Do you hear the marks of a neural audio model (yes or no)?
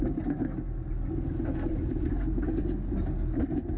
no